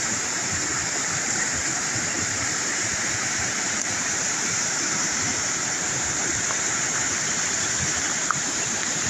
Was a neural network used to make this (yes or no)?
yes